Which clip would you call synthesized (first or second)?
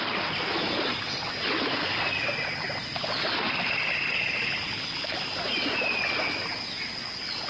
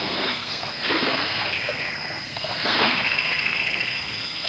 second